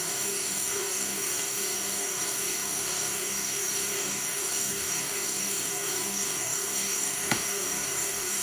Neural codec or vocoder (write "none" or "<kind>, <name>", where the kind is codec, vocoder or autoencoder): codec, DAC